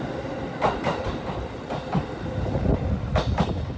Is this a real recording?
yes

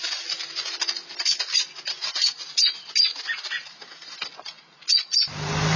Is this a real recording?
yes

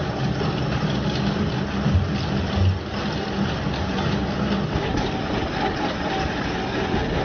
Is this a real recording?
yes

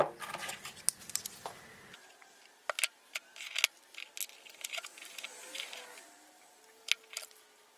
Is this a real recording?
yes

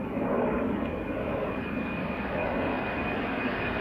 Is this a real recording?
no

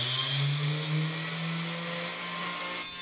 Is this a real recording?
yes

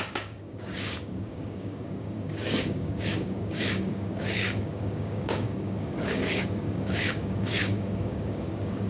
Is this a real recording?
no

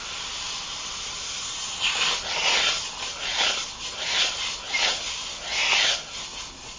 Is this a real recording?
yes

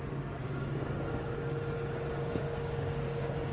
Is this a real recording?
no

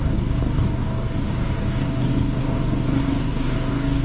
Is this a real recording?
no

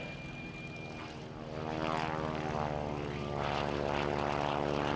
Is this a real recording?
yes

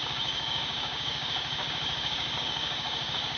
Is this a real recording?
no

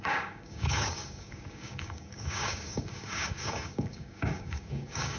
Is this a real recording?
no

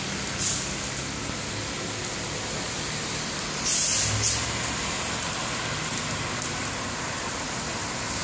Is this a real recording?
yes